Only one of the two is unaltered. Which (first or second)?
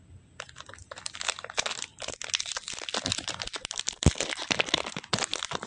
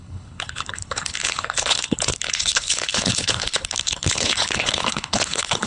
first